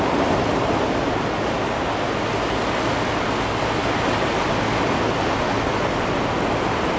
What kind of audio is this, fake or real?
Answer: real